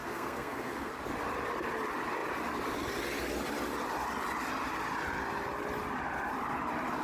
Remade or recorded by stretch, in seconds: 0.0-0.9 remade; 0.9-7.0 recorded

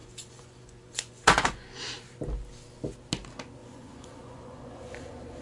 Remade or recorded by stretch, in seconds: 0.0-1.8 remade; 1.8-3.6 recorded; 3.6-5.4 remade

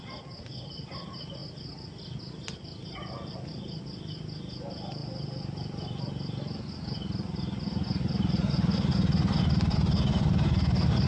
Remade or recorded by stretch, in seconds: 0.0-11.1 recorded

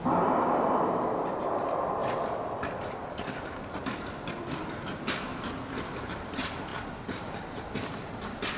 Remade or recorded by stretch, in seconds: 0.0-8.6 recorded

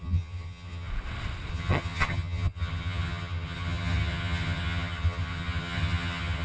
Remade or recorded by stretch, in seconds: 0.0-0.9 remade; 0.9-1.5 recorded; 1.5-6.4 remade